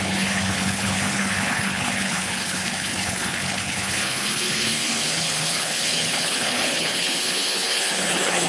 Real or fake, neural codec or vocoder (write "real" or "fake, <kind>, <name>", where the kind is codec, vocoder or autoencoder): fake, codec, HILCodec